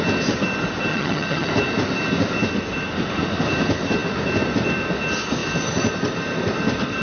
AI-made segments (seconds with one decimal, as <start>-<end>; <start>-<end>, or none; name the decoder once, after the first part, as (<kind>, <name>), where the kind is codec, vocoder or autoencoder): 0.9-1.5 (vocoder, HiFi-GAN)

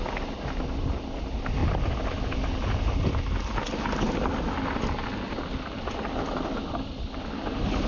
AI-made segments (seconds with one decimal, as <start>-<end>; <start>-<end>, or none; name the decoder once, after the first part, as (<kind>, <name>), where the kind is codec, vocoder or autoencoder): none

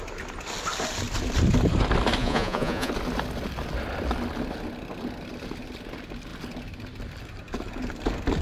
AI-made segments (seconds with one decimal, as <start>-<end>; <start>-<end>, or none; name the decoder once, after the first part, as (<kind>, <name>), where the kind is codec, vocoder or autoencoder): 2.2-2.9 (vocoder, Vocos)